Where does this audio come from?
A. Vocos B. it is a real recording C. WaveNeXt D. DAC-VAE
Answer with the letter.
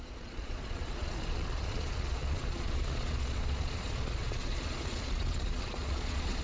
A